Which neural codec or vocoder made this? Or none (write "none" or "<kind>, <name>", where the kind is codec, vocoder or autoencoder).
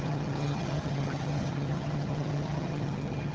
vocoder, HiFi-GAN